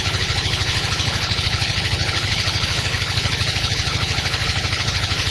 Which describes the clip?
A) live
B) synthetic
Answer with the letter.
B